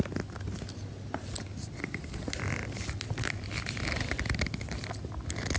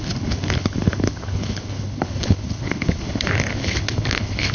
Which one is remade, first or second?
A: second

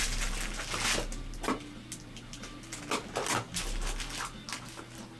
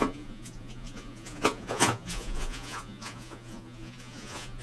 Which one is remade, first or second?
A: second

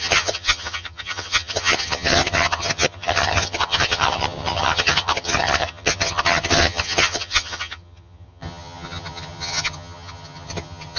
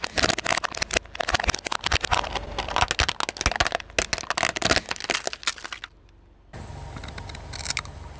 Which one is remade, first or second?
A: first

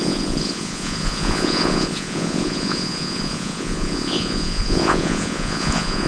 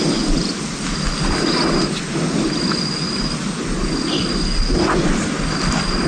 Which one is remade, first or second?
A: first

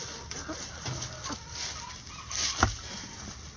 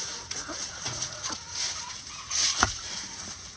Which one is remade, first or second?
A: second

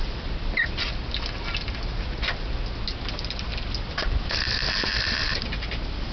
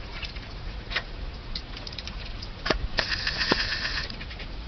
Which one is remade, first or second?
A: second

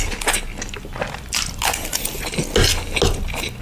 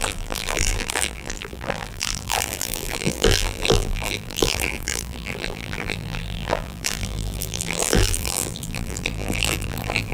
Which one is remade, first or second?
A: second